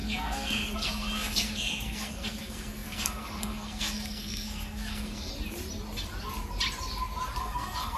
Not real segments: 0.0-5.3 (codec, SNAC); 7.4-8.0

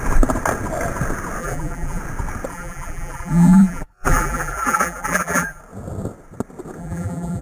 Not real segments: 1.4-2.0 (vocoder, BigVGAN v2); 2.5-5.6; 6.8-7.4

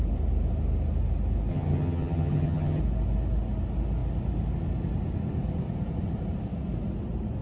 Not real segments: 1.5-2.8 (vocoder, HiFi-GAN)

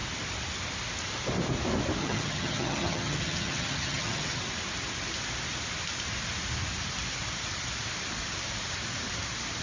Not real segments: 2.0-4.4 (vocoder, HiFi-GAN)